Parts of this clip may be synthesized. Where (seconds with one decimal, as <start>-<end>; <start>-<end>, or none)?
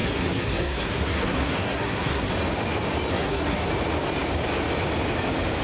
0.0-2.3; 3.1-3.7